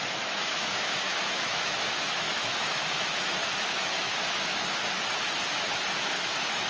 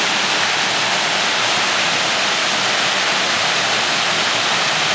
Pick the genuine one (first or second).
second